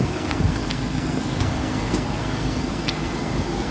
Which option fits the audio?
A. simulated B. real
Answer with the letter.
A